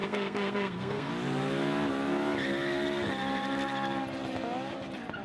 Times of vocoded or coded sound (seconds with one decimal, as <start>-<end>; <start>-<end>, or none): 0.0-1.1